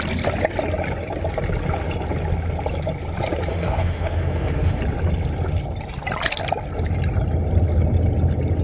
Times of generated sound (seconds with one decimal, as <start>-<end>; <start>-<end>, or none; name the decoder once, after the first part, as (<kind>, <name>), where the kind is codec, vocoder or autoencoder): 3.5-4.8 (autoencoder, DAC-VAE)